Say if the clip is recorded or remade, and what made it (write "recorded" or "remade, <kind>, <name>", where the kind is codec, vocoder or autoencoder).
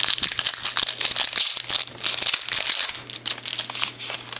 recorded